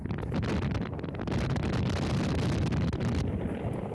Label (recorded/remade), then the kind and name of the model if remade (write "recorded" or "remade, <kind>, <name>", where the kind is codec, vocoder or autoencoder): recorded